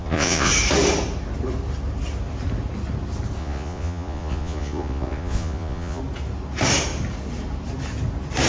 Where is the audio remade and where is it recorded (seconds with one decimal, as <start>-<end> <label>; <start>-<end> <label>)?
0.0-0.5 remade; 0.5-3.4 recorded; 3.4-6.0 remade; 6.0-8.5 recorded